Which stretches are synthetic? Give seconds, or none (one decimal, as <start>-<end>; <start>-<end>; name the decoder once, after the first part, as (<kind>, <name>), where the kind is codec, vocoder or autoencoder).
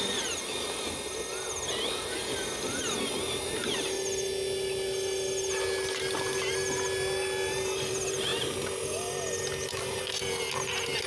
none